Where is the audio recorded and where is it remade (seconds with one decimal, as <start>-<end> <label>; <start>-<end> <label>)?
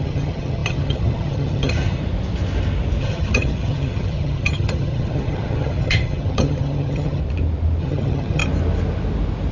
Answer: 0.0-2.0 remade; 2.0-3.0 recorded; 3.0-7.2 remade; 7.2-7.8 recorded; 7.8-8.4 remade; 8.4-9.5 recorded